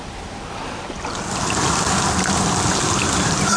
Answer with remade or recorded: recorded